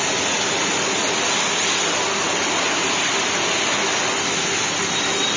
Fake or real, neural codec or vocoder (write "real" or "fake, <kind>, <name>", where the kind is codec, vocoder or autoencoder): real